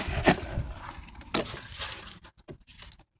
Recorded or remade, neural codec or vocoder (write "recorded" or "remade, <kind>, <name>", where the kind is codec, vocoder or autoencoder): recorded